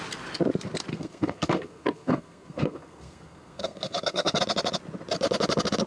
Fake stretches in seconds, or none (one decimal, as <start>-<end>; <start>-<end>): 0.9-4.4